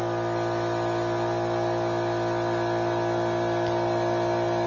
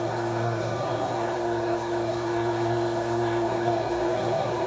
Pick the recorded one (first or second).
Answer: first